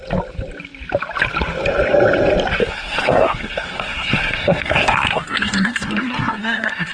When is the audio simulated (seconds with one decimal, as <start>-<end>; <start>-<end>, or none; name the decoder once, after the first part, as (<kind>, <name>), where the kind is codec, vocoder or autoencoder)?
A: 2.6-6.9 (codec, SNAC)

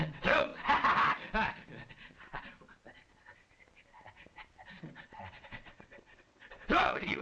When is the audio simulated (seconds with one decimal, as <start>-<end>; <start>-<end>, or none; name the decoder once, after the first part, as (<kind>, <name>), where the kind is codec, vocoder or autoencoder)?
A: 0.0-0.5 (vocoder, WaveNeXt); 4.8-7.2

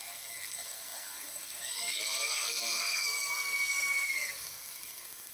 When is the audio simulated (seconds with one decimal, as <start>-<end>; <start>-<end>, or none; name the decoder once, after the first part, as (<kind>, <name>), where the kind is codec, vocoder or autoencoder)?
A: 0.0-5.3 (codec, SNAC)

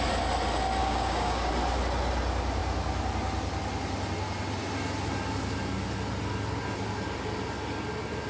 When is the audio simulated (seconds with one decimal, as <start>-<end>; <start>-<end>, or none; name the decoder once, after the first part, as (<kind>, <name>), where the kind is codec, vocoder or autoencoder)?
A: 0.8-1.5 (codec, DAC)

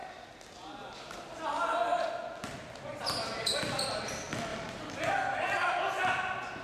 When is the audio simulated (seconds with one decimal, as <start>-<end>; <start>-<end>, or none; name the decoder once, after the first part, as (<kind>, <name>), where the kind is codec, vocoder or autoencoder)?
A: 4.5-5.1 (vocoder, BigVGAN v2)

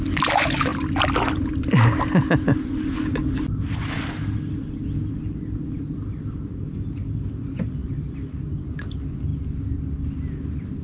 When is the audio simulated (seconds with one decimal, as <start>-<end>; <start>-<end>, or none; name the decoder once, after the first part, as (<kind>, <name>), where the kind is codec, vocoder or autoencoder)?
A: none

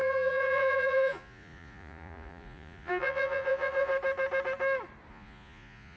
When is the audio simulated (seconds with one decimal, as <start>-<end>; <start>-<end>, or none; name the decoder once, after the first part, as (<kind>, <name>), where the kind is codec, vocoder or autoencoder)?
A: 0.0-3.9 (vocoder, Vocos); 5.1-6.0